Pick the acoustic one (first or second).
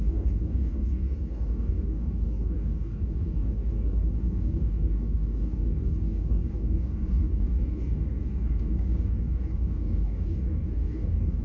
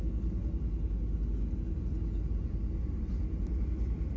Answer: second